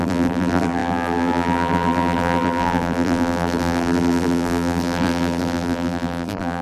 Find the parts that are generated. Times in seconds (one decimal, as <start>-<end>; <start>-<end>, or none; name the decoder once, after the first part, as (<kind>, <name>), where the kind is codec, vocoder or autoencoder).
0.0-6.6 (vocoder, BigVGAN v2)